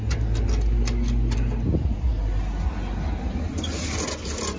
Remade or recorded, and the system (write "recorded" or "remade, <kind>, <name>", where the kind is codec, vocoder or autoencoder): recorded